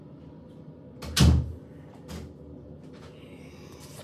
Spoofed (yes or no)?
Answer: no